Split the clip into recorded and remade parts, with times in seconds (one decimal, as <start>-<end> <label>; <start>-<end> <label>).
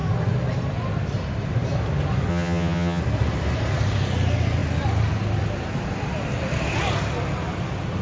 0.0-2.3 recorded; 2.3-3.0 remade; 3.0-8.0 recorded